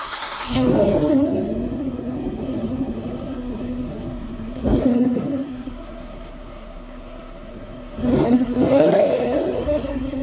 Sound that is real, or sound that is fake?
fake